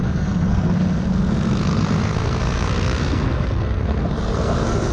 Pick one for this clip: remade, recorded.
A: remade